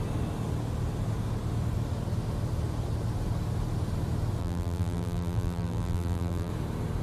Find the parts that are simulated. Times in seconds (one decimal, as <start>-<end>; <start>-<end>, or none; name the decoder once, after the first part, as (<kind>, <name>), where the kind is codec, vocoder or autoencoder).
4.4-6.5 (vocoder, BigVGAN v2)